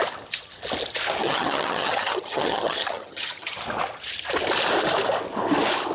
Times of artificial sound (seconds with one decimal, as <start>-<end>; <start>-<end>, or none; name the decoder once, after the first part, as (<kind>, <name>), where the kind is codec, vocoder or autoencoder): 1.2-3.6 (vocoder, HiFi-GAN)